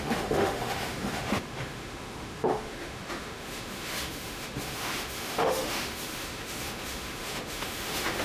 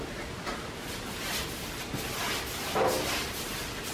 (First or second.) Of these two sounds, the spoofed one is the first